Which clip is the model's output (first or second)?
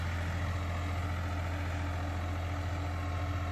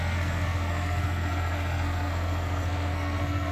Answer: second